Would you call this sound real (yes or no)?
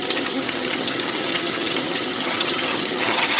no